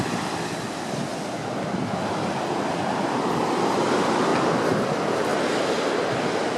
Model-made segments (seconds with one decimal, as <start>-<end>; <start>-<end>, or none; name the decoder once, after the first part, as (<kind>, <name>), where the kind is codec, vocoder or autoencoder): 0.0-1.1 (vocoder, BigVGAN v2); 2.3-4.3; 4.8-5.3; 6.1-6.6